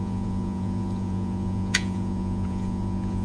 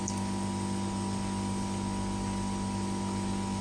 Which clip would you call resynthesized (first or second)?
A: first